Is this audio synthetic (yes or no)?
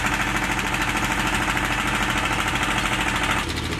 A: no